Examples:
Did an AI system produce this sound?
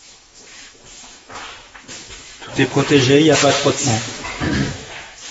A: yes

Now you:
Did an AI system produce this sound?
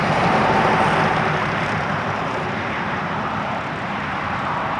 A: yes